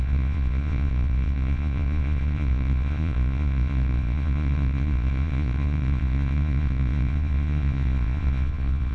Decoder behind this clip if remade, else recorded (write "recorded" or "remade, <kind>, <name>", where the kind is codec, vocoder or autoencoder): remade, vocoder, Vocos